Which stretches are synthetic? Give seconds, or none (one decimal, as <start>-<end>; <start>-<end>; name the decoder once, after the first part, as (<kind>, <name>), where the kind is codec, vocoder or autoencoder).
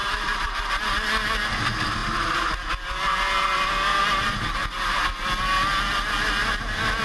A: 0.0-0.6 (vocoder, BigVGAN v2)